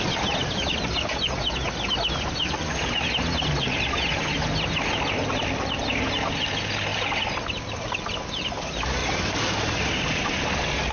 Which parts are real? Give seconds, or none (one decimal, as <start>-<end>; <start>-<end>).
0.0-6.9; 8.0-9.0; 10.0-10.9